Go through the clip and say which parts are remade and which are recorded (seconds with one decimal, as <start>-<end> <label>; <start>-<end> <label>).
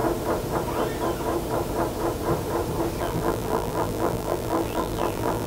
0.0-3.0 recorded; 3.0-5.5 remade